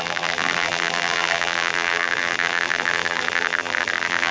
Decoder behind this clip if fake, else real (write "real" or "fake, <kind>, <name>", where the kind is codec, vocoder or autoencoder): fake, vocoder, BigVGAN v2